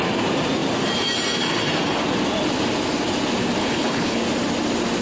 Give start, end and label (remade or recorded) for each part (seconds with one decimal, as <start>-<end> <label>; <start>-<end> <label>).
0.0-3.6 recorded; 3.6-4.2 remade; 4.2-5.0 recorded